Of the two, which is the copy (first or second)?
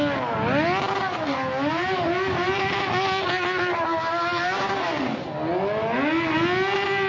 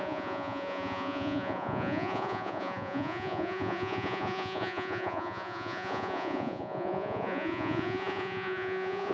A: second